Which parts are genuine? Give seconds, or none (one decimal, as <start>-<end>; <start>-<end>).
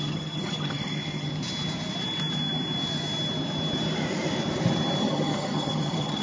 1.3-5.0